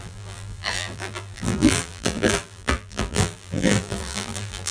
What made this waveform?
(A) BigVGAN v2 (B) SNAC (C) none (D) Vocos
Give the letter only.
A